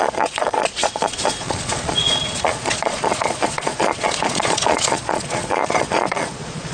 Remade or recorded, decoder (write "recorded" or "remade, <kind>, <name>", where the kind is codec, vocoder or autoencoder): remade, vocoder, Vocos